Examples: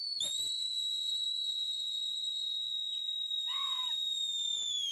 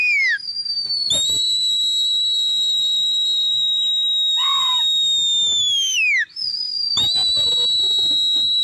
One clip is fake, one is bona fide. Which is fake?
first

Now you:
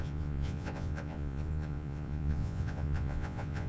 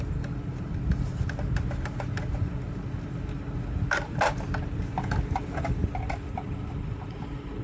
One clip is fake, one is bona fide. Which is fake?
first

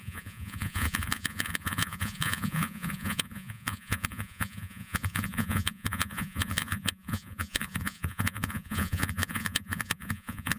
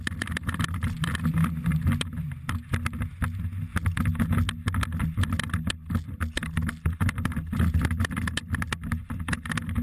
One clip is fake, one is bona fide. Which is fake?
first